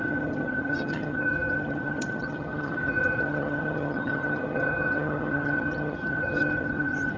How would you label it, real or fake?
fake